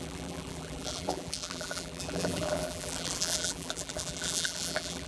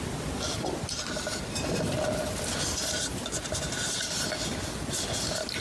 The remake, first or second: first